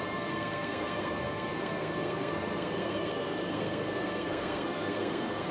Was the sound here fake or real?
fake